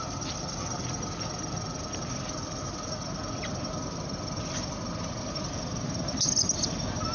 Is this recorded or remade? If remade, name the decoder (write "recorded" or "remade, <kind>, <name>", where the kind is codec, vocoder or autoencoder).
recorded